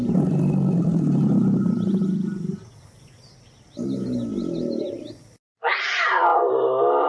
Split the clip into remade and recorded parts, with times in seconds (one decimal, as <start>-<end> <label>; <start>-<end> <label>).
0.0-7.1 recorded